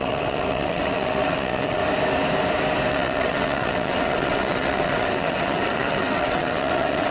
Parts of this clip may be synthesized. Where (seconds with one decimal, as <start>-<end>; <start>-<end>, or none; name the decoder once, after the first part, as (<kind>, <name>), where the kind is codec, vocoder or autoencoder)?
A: 0.0-1.8 (vocoder, WaveNeXt); 2.9-7.1